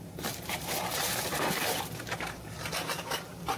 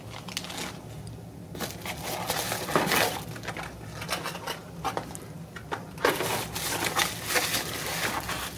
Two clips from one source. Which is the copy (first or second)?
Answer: first